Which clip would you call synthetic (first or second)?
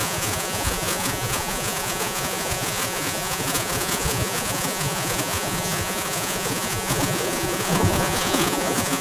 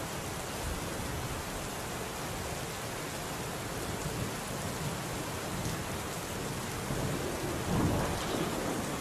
first